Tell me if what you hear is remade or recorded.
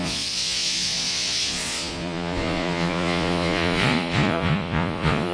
remade